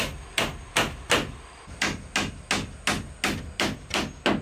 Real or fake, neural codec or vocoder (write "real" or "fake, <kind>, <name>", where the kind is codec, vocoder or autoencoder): real